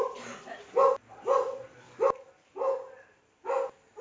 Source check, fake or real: real